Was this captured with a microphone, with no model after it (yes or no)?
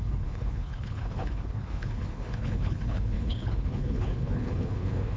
no